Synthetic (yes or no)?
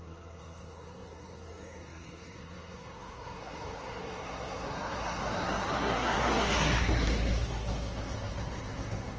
yes